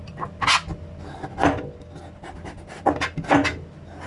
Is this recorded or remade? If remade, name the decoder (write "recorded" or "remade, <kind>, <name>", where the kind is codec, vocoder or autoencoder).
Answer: recorded